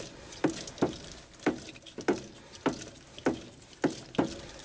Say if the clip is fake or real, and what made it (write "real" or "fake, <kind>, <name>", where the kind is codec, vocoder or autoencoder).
real